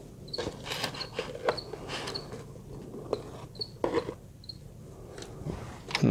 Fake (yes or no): no